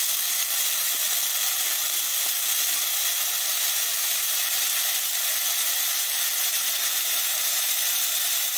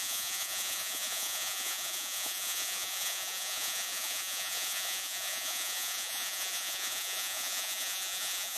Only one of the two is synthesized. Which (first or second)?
second